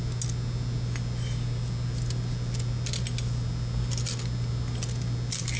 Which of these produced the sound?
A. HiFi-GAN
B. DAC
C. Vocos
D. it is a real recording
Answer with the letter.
D